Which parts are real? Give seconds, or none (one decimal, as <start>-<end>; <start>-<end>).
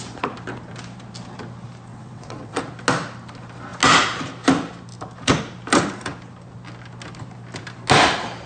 0.0-1.9; 2.6-8.5